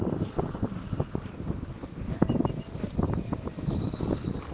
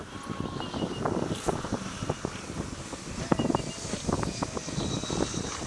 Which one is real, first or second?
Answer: second